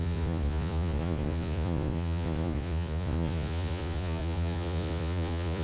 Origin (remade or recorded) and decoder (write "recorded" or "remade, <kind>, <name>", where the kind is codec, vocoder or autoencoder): remade, vocoder, Vocos